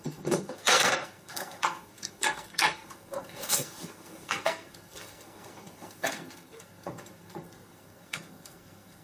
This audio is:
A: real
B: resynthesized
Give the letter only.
B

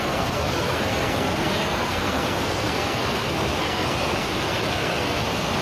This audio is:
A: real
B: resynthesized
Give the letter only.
B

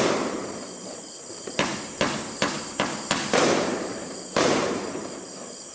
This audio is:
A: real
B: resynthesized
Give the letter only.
B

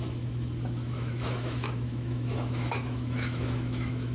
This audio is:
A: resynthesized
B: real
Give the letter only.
A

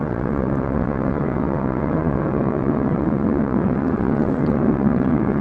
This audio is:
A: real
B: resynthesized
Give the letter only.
B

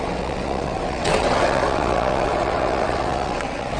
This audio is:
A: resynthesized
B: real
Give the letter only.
A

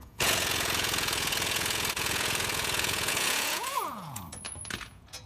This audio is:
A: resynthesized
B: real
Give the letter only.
A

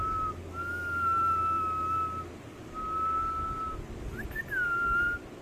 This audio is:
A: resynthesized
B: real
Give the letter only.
B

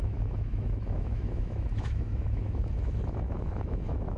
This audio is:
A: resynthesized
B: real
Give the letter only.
A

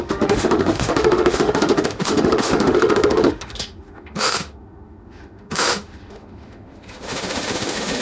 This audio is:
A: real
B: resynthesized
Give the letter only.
B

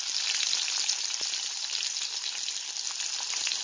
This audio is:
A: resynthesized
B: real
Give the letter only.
B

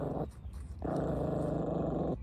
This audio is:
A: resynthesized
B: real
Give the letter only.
B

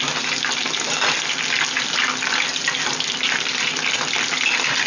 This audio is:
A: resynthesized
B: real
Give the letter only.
B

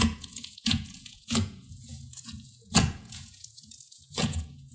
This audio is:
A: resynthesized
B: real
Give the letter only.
A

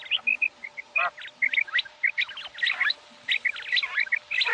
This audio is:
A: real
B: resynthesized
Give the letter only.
A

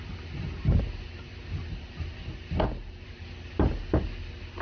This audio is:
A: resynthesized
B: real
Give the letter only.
B